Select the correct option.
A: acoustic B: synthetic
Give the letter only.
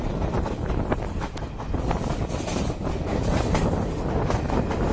A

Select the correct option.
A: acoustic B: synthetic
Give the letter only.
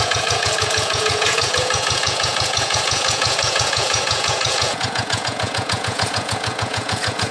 B